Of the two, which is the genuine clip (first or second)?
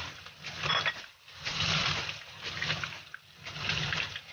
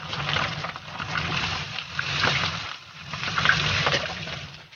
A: first